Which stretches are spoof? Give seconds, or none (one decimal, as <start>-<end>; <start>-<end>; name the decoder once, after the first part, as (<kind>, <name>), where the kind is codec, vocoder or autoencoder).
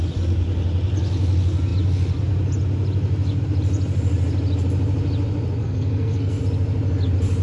5.6-6.4 (codec, SNAC)